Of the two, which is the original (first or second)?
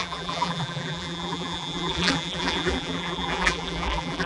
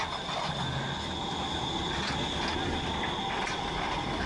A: second